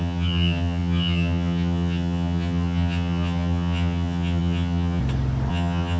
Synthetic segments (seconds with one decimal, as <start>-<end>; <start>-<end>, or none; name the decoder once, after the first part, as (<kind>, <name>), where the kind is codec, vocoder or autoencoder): 0.0-5.0 (vocoder, HiFi-GAN); 5.5-6.0